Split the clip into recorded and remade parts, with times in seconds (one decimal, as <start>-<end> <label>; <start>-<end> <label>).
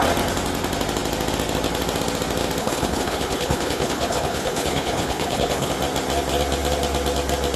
0.0-2.6 recorded; 2.6-5.7 remade; 5.7-7.6 recorded